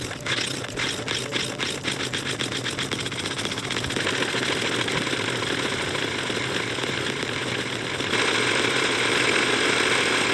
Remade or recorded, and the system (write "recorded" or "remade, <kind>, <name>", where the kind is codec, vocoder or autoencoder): recorded